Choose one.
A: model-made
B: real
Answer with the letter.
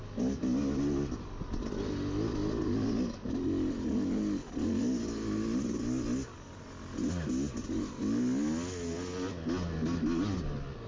B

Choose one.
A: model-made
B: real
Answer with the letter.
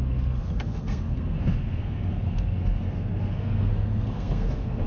A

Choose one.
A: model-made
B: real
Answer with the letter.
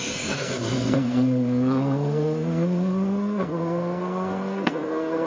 A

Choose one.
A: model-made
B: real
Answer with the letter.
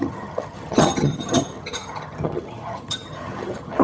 A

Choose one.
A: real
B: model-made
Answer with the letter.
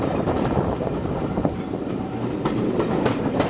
B